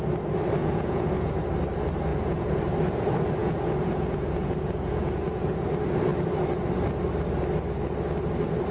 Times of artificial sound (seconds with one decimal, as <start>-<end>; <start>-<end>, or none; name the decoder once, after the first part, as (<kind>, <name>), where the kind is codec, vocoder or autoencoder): 0.6-1.3 (vocoder, Vocos); 2.1-2.6; 3.4-5.5